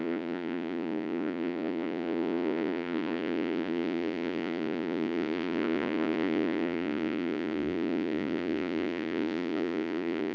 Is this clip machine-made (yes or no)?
yes